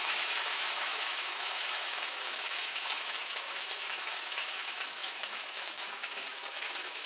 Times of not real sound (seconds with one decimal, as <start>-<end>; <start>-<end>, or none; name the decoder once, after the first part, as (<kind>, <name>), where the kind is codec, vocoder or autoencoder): 0.0-7.1 (autoencoder, DAC-VAE)